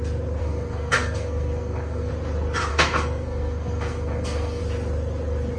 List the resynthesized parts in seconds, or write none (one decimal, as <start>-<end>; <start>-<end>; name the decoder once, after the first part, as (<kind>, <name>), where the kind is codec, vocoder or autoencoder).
0.4-2.1 (codec, SNAC); 2.7-4.6